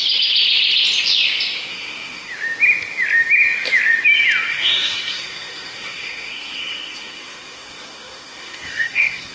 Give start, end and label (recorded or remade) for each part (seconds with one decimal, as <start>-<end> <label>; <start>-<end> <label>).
0.0-1.7 recorded; 1.7-2.3 remade; 2.3-4.5 recorded; 4.5-9.3 remade